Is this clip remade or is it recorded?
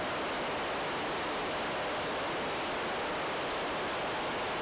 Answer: recorded